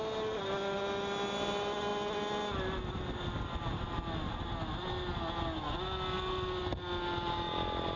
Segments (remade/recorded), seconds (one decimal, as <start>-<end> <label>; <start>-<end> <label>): 0.0-8.0 recorded